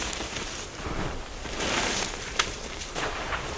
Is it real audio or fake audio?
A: fake